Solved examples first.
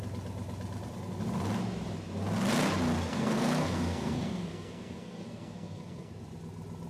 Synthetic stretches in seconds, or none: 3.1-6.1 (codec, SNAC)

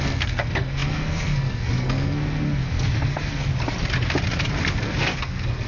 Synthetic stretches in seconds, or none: 0.0-3.5 (codec, SNAC); 4.6-5.7

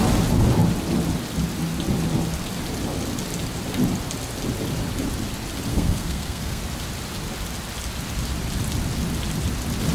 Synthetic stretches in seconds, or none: 5.7-6.6 (codec, SNAC)

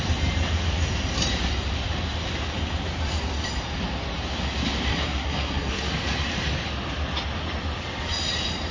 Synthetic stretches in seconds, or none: 4.9-5.7 (codec, SNAC)